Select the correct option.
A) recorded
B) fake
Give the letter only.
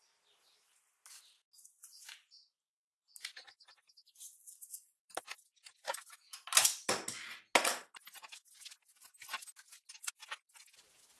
A